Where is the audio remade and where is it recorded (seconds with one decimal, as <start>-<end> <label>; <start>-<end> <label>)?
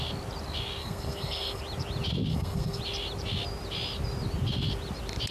0.0-0.8 recorded; 0.8-1.6 remade; 1.6-2.3 recorded; 2.3-2.8 remade; 2.8-5.3 recorded